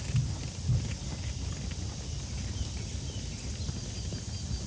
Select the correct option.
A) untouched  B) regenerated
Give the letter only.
A